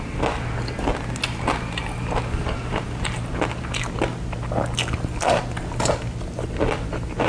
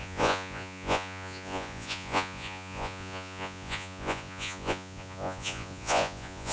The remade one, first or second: second